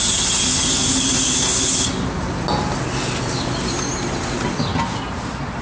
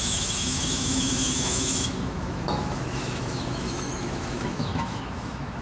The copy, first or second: second